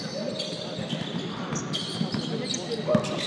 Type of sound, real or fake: real